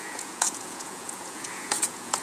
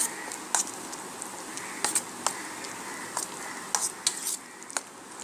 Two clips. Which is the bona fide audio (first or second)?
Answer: second